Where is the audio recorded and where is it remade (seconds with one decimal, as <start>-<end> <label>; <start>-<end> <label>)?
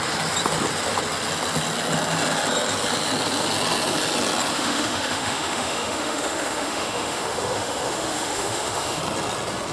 0.0-4.5 recorded; 4.5-9.0 remade; 9.0-9.7 recorded